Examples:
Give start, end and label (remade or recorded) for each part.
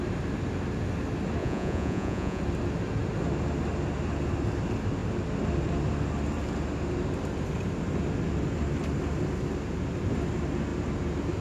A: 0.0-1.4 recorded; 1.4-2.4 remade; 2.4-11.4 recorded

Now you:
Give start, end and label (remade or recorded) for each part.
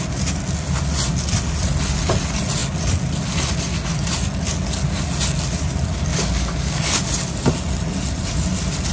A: 0.0-6.1 recorded; 6.1-6.8 remade; 6.8-8.9 recorded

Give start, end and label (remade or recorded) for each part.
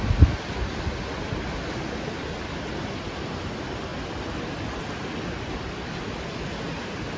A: 0.0-7.2 recorded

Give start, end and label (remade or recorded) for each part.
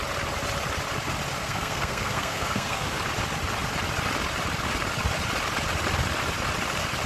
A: 0.0-1.4 recorded; 1.4-3.0 remade; 3.0-7.1 recorded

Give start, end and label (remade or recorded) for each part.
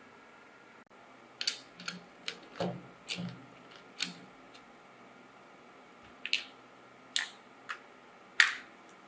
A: 0.0-9.1 recorded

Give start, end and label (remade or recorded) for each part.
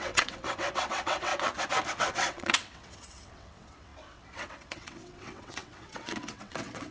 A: 0.0-1.3 remade; 1.3-1.9 recorded; 1.9-6.9 remade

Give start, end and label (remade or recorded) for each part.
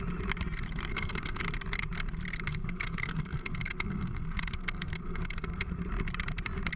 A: 0.0-0.9 recorded; 0.9-1.4 remade; 1.4-2.5 recorded; 2.5-5.7 remade; 5.7-6.8 recorded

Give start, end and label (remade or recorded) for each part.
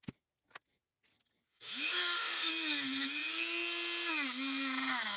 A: 0.0-1.5 recorded; 1.5-2.5 remade; 2.5-5.2 recorded